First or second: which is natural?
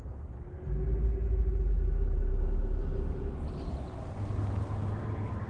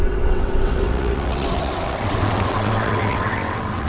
first